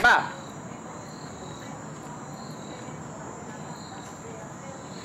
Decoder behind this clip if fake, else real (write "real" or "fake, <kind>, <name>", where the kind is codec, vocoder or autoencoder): real